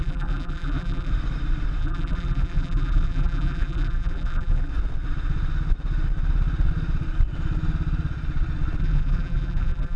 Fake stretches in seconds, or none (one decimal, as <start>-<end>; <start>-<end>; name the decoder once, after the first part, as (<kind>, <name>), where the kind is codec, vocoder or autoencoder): 0.0-1.1 (vocoder, BigVGAN v2); 1.8-4.7; 8.8-10.0